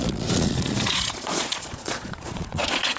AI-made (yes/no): yes